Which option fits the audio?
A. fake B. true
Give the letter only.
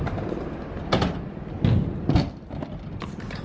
B